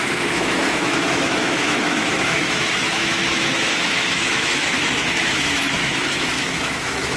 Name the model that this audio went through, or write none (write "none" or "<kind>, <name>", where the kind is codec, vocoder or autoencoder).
autoencoder, DAC-VAE